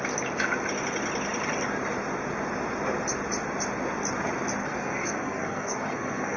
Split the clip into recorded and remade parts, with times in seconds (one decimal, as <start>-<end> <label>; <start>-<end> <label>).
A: 0.0-4.6 recorded; 4.6-6.4 remade